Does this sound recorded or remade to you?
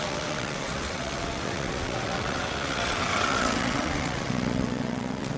remade